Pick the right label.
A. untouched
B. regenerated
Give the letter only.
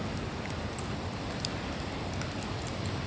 A